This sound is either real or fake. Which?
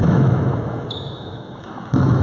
fake